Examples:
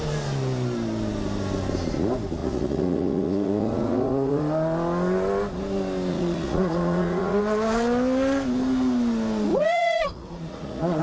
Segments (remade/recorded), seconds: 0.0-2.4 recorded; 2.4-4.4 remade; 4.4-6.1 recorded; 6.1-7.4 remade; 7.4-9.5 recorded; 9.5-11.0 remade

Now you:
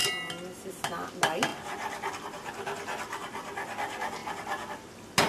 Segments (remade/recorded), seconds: 0.0-5.3 recorded

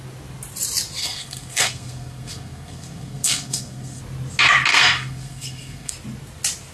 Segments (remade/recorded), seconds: 0.0-1.0 recorded; 1.0-4.0 remade; 4.0-4.7 recorded; 4.7-5.9 remade; 5.9-6.7 recorded

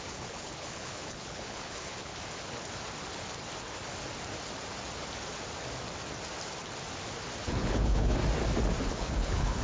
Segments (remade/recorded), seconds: 0.0-2.1 remade; 2.1-7.4 recorded; 7.4-8.2 remade; 8.2-8.9 recorded; 8.9-9.6 remade

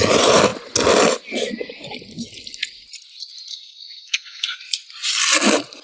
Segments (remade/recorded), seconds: 0.0-3.5 recorded; 3.5-4.6 remade; 4.6-5.8 recorded

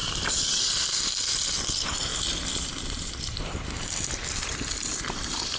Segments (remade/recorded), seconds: 0.0-0.7 remade; 0.7-2.1 recorded; 2.1-5.6 remade